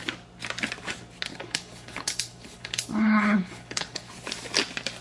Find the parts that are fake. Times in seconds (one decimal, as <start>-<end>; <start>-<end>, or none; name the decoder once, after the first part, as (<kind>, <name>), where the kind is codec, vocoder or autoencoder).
1.3-4.1 (codec, HILCodec)